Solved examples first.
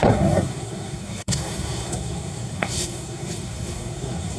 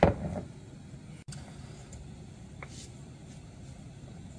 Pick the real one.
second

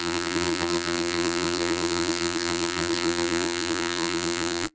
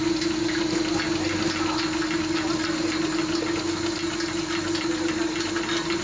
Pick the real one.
second